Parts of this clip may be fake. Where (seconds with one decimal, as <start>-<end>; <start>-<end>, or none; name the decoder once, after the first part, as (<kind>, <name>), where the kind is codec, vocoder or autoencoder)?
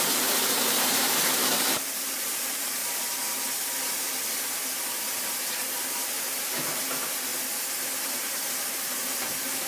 0.0-2.8 (vocoder, BigVGAN v2); 6.4-7.3; 8.0-9.7